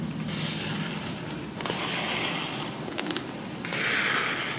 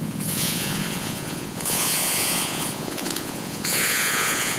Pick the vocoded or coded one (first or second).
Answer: second